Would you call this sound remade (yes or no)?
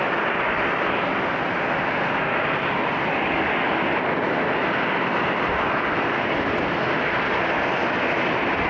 no